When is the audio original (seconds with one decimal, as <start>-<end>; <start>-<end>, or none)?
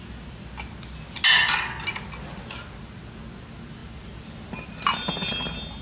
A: 0.0-5.8